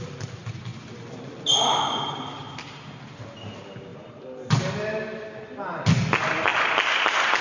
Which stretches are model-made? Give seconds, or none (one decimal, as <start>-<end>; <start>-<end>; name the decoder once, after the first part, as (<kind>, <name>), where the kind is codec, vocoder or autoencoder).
3.9-4.7 (vocoder, BigVGAN v2)